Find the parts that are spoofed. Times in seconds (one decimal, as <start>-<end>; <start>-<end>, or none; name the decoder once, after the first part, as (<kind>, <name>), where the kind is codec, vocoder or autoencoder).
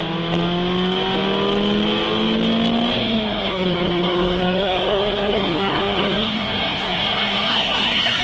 3.0-8.2 (codec, SNAC)